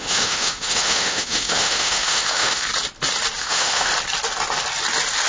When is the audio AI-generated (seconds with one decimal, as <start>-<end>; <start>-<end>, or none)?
0.0-2.7; 3.4-3.9